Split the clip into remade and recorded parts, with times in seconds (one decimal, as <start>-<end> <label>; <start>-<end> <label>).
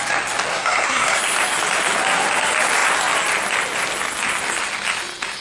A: 0.0-0.5 recorded; 0.5-1.2 remade; 1.2-5.4 recorded